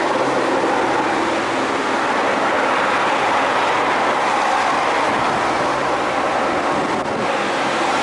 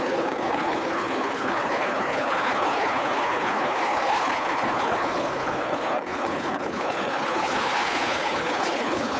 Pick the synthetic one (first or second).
second